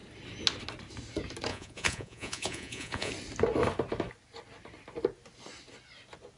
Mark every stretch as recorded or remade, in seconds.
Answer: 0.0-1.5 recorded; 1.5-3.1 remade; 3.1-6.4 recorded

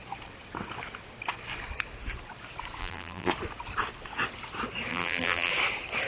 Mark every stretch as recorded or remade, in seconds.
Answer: 0.0-2.8 recorded; 2.8-3.3 remade; 3.3-4.9 recorded; 4.9-5.5 remade; 5.5-6.1 recorded

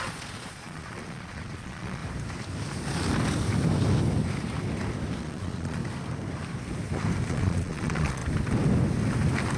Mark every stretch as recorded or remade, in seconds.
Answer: 0.0-2.0 remade; 2.0-5.2 recorded; 5.2-5.8 remade; 5.8-7.3 recorded; 7.3-8.2 remade; 8.2-9.6 recorded

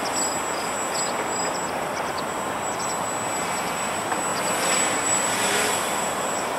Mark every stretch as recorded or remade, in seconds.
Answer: 0.0-1.6 recorded; 1.6-2.1 remade; 2.1-4.3 recorded; 4.3-6.1 remade; 6.1-6.6 recorded

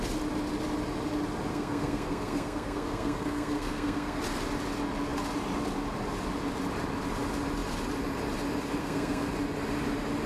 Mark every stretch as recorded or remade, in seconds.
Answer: 0.0-1.5 recorded; 1.5-4.2 remade; 4.2-8.8 recorded; 8.8-9.3 remade; 9.3-10.3 recorded

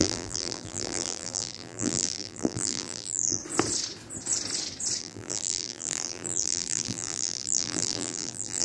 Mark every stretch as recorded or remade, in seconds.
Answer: 0.0-3.4 remade; 3.4-5.0 recorded; 5.0-8.6 remade

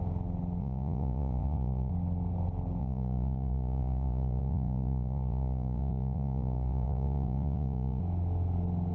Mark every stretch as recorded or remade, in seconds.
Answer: 0.0-0.6 recorded; 0.6-1.9 remade; 1.9-2.8 recorded; 2.8-8.0 remade; 8.0-8.9 recorded